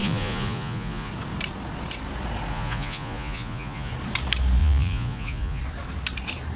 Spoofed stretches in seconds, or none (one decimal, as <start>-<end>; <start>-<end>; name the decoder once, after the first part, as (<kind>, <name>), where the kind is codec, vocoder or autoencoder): 0.0-1.1 (vocoder, Vocos); 2.5-3.9; 4.6-5.6